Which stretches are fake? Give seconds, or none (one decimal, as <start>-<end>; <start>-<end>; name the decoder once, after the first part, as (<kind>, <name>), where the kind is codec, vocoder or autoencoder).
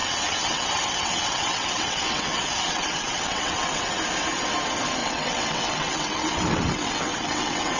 0.0-3.9 (vocoder, WaveNeXt); 5.0-7.8